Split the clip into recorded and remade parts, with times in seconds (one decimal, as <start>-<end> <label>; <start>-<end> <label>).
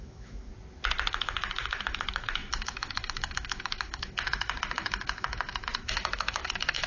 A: 0.0-0.5 remade; 0.5-1.1 recorded; 1.1-6.9 remade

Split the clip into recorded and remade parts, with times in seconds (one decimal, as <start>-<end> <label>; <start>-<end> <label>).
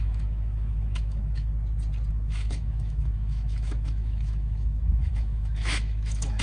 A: 0.0-1.5 remade; 1.5-2.1 recorded; 2.1-6.4 remade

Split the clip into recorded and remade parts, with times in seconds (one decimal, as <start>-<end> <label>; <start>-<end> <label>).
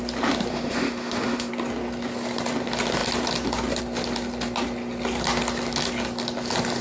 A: 0.0-0.5 recorded; 0.5-1.5 remade; 1.5-6.8 recorded